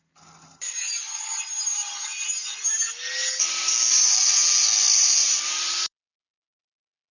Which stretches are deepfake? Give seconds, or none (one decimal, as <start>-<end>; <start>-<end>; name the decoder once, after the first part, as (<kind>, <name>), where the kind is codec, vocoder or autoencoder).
none